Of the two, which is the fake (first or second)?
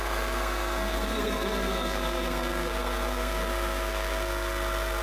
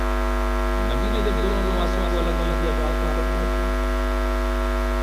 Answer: first